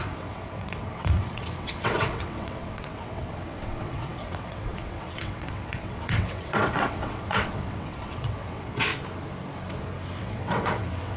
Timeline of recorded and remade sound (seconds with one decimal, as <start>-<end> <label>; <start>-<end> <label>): 0.0-8.9 remade; 8.9-10.2 recorded; 10.2-11.2 remade